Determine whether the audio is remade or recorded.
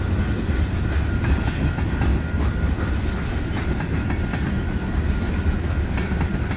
remade